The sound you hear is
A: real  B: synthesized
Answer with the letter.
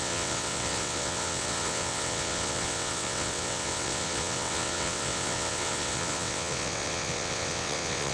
B